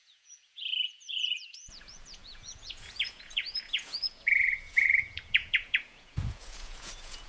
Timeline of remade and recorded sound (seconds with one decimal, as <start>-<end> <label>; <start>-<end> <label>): 0.0-7.3 remade